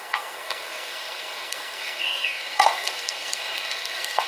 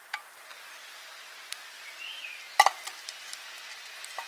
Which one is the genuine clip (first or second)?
second